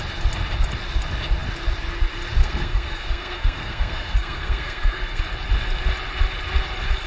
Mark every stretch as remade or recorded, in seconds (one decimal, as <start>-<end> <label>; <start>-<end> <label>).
0.0-2.4 recorded; 2.4-5.2 remade; 5.2-7.1 recorded